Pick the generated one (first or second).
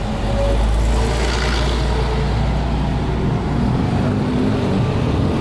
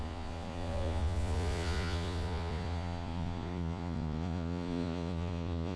second